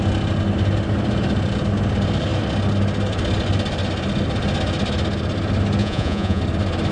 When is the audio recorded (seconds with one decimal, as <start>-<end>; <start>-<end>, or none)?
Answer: 0.0-5.8; 6.4-6.9